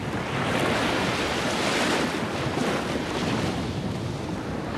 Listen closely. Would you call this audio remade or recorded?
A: recorded